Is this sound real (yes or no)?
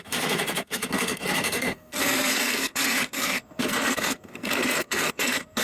no